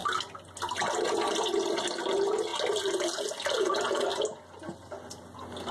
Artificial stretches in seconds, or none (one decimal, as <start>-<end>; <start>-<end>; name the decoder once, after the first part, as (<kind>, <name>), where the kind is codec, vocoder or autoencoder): none